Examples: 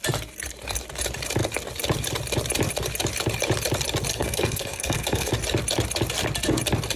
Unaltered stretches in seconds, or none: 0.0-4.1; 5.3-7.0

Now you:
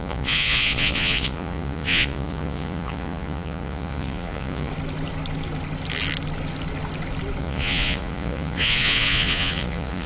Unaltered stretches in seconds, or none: 4.7-7.4